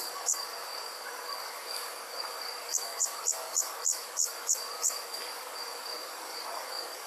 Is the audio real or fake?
fake